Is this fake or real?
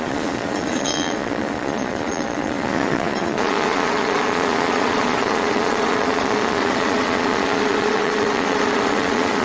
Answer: fake